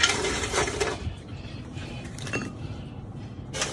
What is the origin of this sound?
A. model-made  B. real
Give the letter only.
A